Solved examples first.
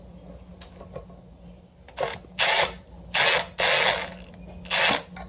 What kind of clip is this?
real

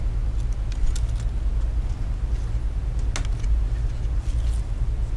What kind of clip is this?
real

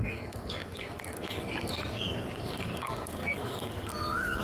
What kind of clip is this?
fake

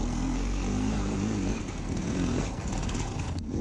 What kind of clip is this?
fake